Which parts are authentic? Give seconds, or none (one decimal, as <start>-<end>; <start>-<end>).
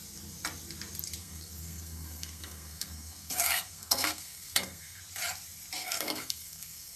0.0-1.2; 5.0-5.8